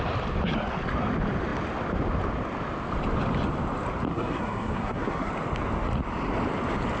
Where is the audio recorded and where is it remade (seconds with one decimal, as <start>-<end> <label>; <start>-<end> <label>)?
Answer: 0.0-4.1 recorded; 4.1-5.3 remade; 5.3-7.0 recorded